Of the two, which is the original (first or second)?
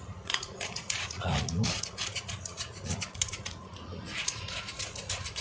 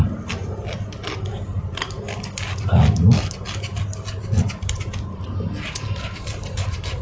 second